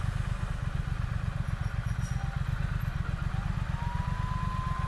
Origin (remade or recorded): recorded